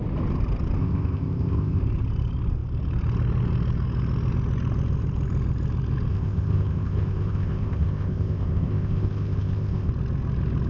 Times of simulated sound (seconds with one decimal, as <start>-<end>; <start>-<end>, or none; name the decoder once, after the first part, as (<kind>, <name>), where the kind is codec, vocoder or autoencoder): 0.8-1.8 (codec, ZipCodec); 6.1-9.9